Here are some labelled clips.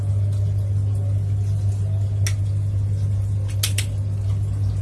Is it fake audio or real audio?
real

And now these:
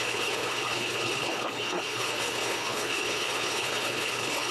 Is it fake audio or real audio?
fake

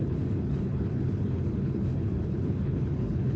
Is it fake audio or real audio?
fake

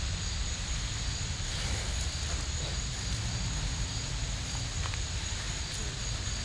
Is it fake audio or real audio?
real